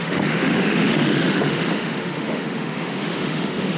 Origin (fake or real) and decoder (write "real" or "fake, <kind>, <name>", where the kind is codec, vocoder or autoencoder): fake, autoencoder, DAC-VAE